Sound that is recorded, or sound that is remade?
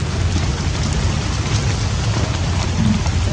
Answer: recorded